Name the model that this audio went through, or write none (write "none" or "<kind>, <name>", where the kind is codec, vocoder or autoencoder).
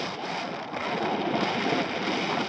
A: none